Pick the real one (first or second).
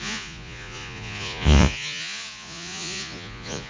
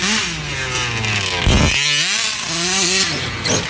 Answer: second